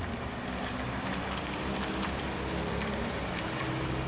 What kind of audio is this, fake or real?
real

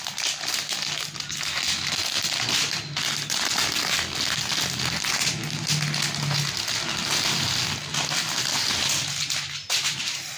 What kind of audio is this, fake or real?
real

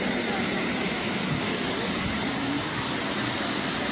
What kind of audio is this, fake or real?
real